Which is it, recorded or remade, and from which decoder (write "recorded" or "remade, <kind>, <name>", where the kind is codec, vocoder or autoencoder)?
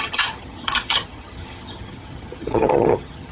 remade, vocoder, HiFi-GAN